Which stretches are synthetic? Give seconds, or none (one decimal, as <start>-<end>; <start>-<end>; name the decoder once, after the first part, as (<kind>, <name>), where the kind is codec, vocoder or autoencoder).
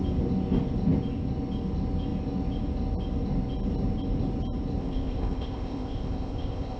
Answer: 4.8-6.8 (codec, ZipCodec)